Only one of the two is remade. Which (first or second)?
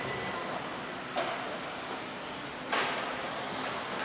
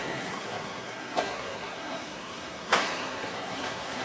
second